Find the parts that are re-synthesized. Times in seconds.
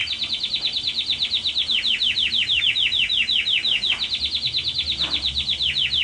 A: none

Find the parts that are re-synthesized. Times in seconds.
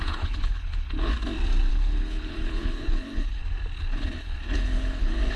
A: 0.0-1.1 (codec, HILCodec); 1.7-3.4; 3.9-5.4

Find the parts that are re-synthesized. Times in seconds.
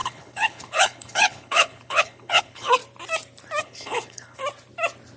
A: 0.0-2.8 (codec, HILCodec); 3.6-4.4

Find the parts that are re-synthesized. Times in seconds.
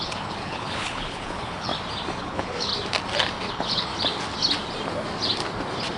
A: 0.0-1.7 (codec, HILCodec); 2.2-2.7; 3.5-3.9